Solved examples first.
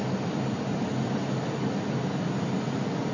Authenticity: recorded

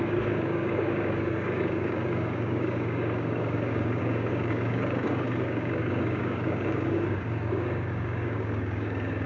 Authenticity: remade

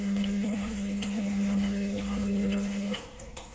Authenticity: remade